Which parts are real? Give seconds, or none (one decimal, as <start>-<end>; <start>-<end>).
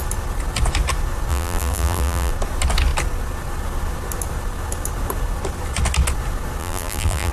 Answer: 0.0-1.3; 2.3-6.6